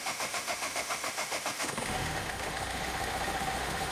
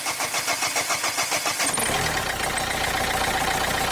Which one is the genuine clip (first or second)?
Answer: second